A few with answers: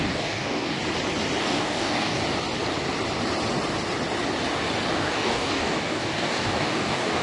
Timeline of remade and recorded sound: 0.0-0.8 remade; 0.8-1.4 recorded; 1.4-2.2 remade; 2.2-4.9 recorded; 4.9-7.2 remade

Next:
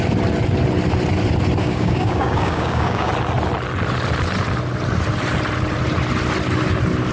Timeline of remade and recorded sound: 0.0-1.6 recorded; 1.6-3.1 remade; 3.1-7.1 recorded

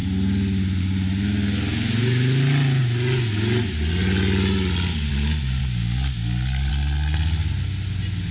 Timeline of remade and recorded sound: 0.0-5.6 recorded; 5.6-6.7 remade; 6.7-8.3 recorded

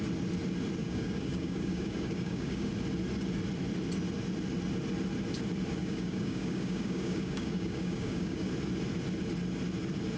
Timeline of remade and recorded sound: 0.0-0.8 recorded; 0.8-2.7 remade; 2.7-5.8 recorded; 5.8-8.5 remade; 8.5-10.2 recorded